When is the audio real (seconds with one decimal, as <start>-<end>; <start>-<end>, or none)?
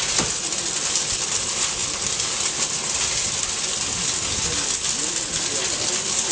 0.0-6.3